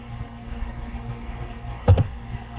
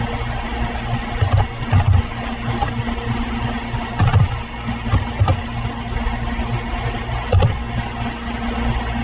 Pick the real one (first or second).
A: second